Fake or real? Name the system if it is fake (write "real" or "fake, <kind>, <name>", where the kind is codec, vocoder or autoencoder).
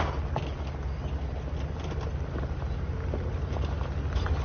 real